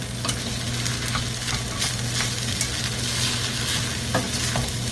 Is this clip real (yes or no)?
yes